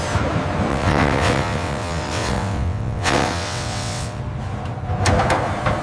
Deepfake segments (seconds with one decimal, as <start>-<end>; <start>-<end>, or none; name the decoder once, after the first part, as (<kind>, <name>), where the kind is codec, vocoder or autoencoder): 0.7-4.2 (vocoder, WaveNeXt)